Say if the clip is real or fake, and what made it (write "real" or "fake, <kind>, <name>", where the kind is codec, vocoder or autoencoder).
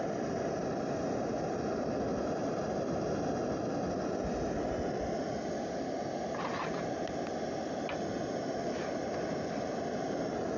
real